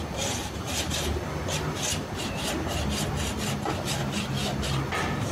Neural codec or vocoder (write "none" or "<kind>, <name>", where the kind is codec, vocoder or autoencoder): none